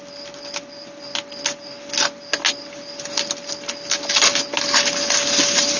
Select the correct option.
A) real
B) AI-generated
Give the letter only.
A